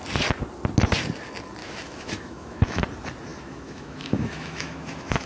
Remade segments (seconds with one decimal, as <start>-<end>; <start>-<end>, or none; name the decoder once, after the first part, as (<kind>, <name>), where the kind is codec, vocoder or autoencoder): 1.6-2.8 (autoencoder, DAC-VAE); 3.3-5.3

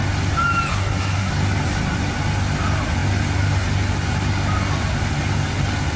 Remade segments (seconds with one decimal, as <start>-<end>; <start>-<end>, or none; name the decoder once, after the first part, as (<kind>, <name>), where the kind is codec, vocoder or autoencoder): 0.7-1.3 (codec, SNAC)

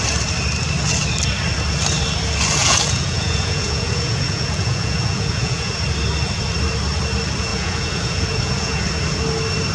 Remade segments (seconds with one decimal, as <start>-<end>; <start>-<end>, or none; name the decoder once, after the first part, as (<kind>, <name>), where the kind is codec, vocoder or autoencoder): 2.6-5.7 (vocoder, Vocos); 7.5-8.9

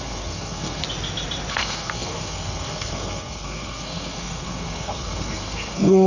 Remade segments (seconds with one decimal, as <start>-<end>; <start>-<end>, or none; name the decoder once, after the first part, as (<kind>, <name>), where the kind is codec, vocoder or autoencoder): 0.0-0.8 (codec, SNAC); 1.5-6.1

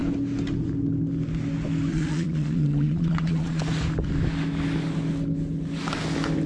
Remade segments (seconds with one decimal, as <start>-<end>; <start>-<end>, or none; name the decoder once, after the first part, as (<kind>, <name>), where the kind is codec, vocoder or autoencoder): 1.9-3.6 (vocoder, Vocos)